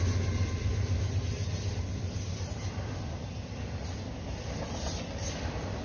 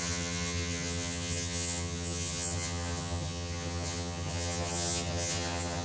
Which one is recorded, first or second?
first